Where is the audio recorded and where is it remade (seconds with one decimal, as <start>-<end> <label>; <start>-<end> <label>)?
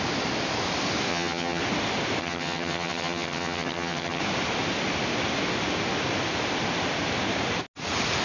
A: 0.0-1.1 recorded; 1.1-1.6 remade; 1.6-2.2 recorded; 2.2-4.2 remade; 4.2-8.2 recorded